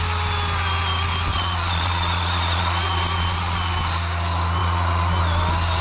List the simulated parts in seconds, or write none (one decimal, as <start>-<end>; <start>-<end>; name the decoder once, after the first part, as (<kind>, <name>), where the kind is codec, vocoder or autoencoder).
1.3-3.7 (vocoder, Vocos); 4.6-5.2

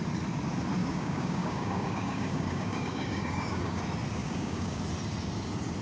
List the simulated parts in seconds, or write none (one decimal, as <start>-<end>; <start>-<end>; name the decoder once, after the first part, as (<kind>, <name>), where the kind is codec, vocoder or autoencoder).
0.8-3.8 (codec, DAC); 4.2-4.8

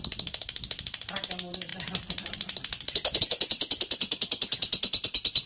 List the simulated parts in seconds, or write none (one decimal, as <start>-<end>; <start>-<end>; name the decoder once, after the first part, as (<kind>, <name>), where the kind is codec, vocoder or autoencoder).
none

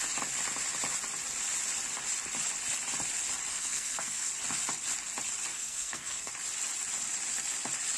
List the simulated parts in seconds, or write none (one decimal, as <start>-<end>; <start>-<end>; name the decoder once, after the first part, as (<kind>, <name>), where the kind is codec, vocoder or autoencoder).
3.5-4.3 (codec, SNAC); 5.5-6.3

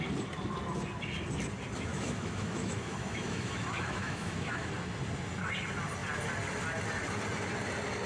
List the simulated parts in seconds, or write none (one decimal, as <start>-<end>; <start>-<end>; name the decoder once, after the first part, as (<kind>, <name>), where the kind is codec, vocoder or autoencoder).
1.9-4.7 (autoencoder, DAC-VAE)